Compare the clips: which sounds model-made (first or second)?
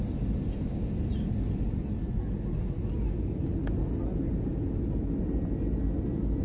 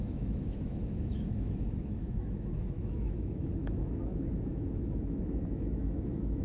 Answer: second